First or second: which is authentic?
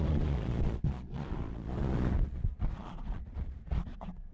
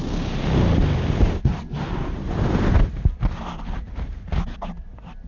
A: second